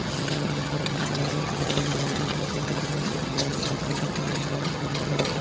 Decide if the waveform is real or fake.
fake